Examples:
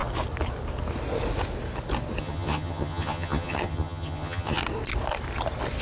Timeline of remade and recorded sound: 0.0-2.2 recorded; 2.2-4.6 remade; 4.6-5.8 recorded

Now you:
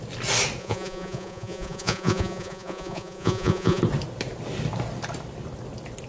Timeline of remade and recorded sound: 0.0-0.6 recorded; 0.6-3.8 remade; 3.8-6.1 recorded